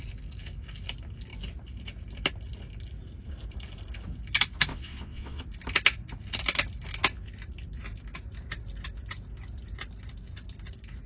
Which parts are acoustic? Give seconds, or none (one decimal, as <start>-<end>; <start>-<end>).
0.0-4.7; 5.4-11.1